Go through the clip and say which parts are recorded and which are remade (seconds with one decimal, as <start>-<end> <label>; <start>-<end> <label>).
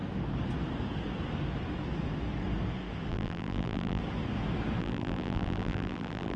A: 0.0-3.1 recorded; 3.1-4.0 remade; 4.0-4.8 recorded; 4.8-6.4 remade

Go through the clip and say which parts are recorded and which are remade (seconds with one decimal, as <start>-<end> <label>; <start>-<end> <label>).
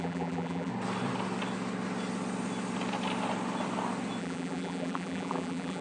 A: 0.0-0.7 remade; 0.7-4.2 recorded; 4.2-5.8 remade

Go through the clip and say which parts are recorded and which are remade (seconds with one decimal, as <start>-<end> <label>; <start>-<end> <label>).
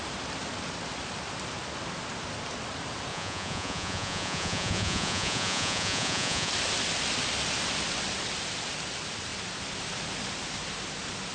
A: 0.0-3.1 recorded; 3.1-6.5 remade; 6.5-11.3 recorded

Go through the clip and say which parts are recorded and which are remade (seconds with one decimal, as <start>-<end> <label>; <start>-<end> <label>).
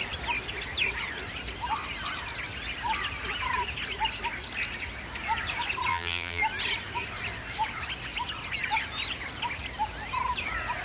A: 0.0-5.9 recorded; 5.9-6.4 remade; 6.4-10.8 recorded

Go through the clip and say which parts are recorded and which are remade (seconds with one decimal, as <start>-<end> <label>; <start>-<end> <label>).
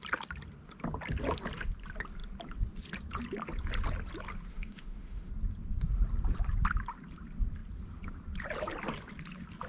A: 0.0-4.5 recorded; 4.5-5.3 remade; 5.3-9.7 recorded